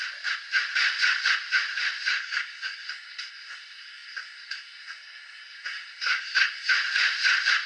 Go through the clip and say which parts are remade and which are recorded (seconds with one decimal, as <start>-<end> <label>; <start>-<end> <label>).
0.0-2.1 recorded; 2.1-6.7 remade; 6.7-7.7 recorded